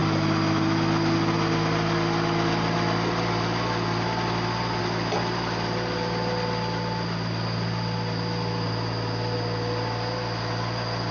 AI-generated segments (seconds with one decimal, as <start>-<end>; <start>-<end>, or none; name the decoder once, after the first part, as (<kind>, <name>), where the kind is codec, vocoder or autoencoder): none